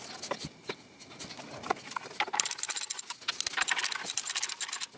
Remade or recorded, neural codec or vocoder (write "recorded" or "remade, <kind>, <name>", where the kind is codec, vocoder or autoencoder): recorded